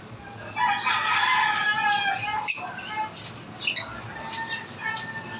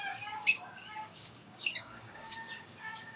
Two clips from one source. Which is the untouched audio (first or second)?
first